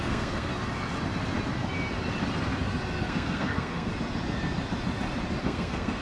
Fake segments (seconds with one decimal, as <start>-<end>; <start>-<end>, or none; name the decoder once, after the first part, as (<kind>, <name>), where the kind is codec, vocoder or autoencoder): 0.0-0.5 (codec, SNAC); 3.0-3.9; 5.4-6.0